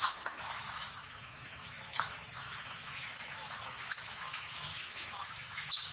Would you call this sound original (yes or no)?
no